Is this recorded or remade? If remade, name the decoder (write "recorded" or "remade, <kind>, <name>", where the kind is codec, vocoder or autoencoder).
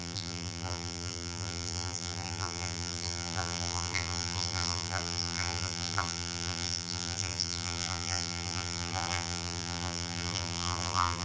remade, vocoder, BigVGAN v2